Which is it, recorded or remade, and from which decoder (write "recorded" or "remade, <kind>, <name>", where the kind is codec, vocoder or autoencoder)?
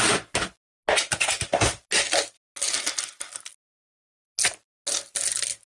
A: recorded